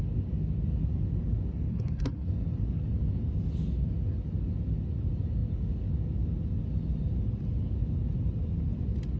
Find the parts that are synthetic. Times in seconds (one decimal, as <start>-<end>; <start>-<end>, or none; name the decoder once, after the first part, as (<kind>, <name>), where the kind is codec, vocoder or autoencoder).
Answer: 1.7-2.3 (codec, SNAC)

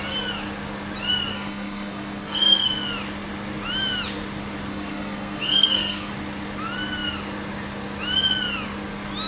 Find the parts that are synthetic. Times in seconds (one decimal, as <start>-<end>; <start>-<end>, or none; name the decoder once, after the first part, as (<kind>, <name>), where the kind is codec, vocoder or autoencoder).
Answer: 1.3-2.7 (codec, SNAC); 4.7-6.1

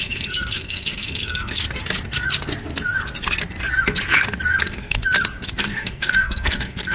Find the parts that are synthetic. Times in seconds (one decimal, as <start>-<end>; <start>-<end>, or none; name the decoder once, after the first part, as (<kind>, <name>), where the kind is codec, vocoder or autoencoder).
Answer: 0.0-1.6 (codec, SNAC); 4.6-5.0; 5.6-6.9

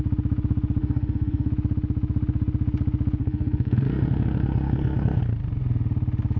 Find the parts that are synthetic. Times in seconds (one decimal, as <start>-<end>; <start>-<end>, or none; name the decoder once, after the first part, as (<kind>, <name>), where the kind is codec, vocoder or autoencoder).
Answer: 0.8-1.5 (codec, SNAC); 3.2-5.2